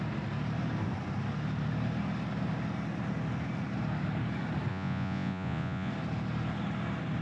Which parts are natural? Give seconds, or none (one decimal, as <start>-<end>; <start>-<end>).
0.0-4.7; 5.9-7.2